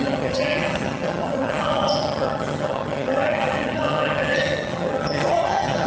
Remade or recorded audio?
remade